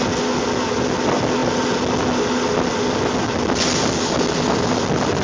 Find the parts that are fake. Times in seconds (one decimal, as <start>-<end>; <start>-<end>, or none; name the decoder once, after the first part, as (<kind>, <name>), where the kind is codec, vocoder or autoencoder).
none